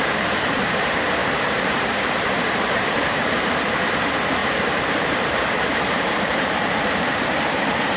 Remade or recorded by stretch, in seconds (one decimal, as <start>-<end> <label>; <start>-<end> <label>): 0.0-8.0 remade